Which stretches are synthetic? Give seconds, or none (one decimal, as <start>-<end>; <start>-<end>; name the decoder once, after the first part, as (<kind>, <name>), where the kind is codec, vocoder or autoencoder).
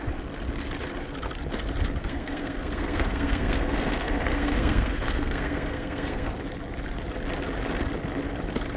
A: 2.0-6.3 (codec, SNAC)